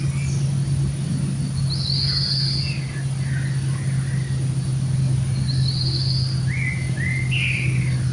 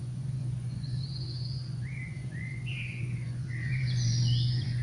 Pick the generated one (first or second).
second